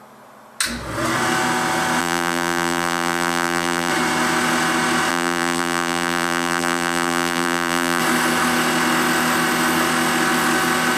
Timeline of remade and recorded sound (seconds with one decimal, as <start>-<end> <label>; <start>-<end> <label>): 0.0-2.0 recorded; 2.0-3.9 remade; 3.9-5.1 recorded; 5.1-8.0 remade; 8.0-11.0 recorded